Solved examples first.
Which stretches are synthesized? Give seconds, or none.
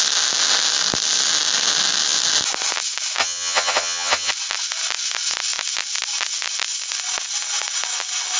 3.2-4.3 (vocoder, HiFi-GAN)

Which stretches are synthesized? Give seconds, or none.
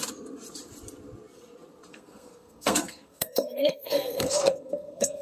1.9-5.2 (codec, SNAC)